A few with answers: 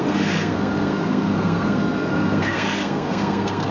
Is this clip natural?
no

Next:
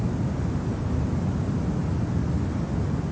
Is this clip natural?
yes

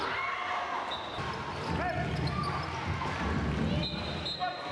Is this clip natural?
yes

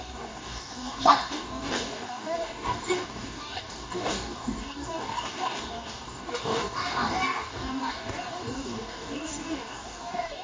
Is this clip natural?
no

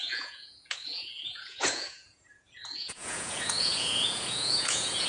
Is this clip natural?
no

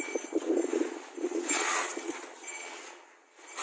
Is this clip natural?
no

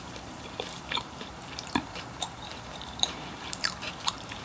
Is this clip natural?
no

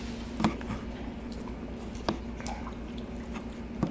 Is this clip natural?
yes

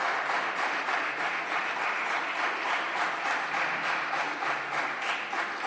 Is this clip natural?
yes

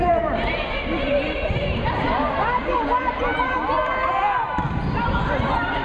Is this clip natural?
no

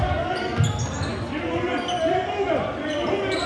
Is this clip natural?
yes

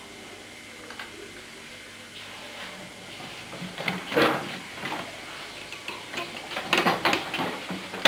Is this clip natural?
yes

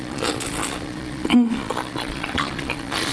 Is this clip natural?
no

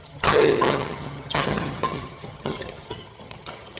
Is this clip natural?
no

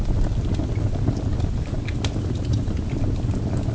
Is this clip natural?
yes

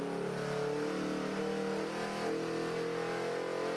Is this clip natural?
yes